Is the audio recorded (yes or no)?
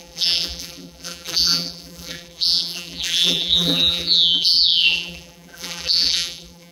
no